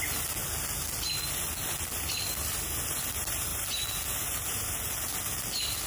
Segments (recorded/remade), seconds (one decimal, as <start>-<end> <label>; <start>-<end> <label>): 0.0-0.4 remade; 0.4-1.3 recorded; 1.3-3.5 remade; 3.5-5.9 recorded